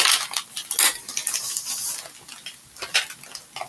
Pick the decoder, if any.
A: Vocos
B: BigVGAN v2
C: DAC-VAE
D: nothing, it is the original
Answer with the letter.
D